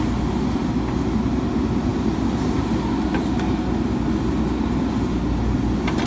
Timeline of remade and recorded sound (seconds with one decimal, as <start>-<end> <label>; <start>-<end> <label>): 0.0-6.1 recorded

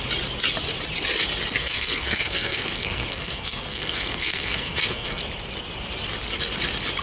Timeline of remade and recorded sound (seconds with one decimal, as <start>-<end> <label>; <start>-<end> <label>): 0.0-1.6 recorded; 1.6-5.2 remade; 5.2-7.0 recorded

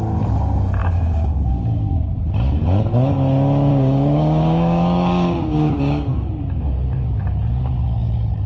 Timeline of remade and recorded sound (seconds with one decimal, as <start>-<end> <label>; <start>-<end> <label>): 0.0-0.8 recorded; 0.8-2.2 remade; 2.2-3.7 recorded; 3.7-6.4 remade; 6.4-8.5 recorded